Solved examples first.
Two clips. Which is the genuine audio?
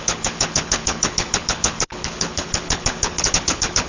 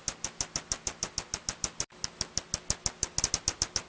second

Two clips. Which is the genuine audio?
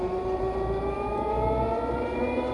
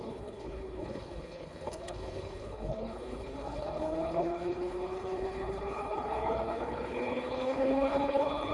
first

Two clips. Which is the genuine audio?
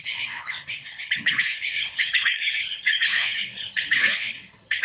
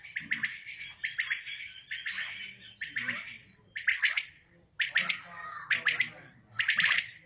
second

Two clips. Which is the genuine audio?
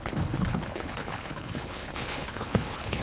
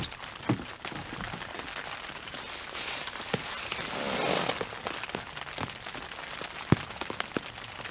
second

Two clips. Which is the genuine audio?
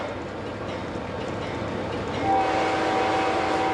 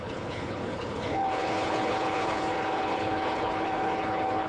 first